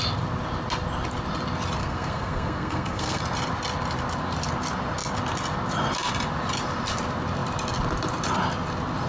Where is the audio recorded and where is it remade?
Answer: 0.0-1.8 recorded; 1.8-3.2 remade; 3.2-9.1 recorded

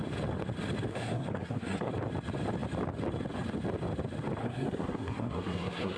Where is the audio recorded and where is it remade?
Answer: 0.0-0.9 recorded; 0.9-1.9 remade; 1.9-4.4 recorded; 4.4-6.0 remade

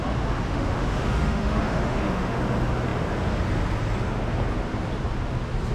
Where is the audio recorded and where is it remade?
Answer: 0.0-0.5 recorded; 0.5-2.4 remade; 2.4-5.7 recorded

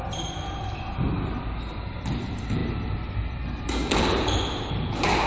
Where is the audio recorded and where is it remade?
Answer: 0.0-5.3 recorded

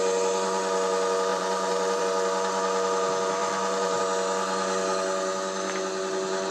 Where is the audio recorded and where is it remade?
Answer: 0.0-1.3 recorded; 1.3-2.0 remade; 2.0-3.4 recorded; 3.4-4.0 remade; 4.0-6.5 recorded

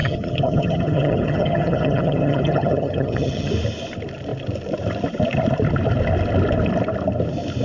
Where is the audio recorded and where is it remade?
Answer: 0.0-3.5 remade; 3.5-7.6 recorded

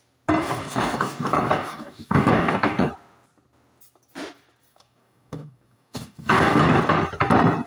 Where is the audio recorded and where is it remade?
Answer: 0.0-0.4 recorded; 0.4-2.9 remade; 2.9-4.7 recorded; 4.7-6.8 remade; 6.8-7.7 recorded